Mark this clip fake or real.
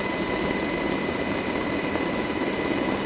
real